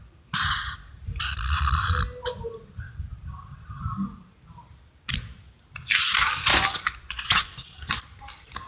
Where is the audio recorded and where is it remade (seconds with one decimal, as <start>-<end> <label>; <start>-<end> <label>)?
0.0-6.5 recorded; 6.5-8.0 remade; 8.0-8.7 recorded